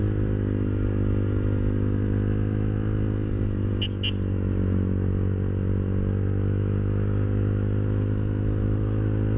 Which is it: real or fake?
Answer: real